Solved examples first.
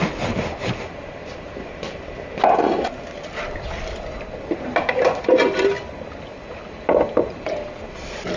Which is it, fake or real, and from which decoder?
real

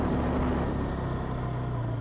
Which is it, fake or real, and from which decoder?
real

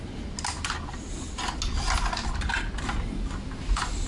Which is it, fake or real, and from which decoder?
real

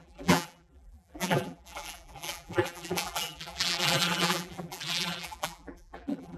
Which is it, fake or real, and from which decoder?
fake, vocoder, BigVGAN v2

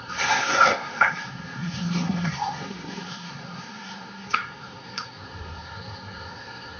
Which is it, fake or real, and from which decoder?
fake, codec, SNAC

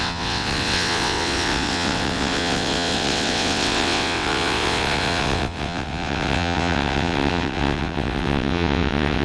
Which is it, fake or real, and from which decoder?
fake, vocoder, WaveNeXt